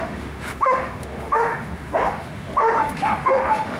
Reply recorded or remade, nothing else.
remade